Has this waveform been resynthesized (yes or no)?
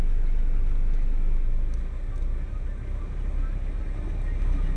no